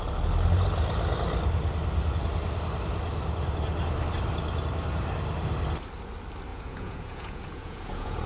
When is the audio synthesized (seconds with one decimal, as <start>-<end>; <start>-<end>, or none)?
6.5-8.3